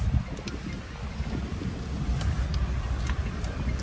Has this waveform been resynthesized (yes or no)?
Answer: no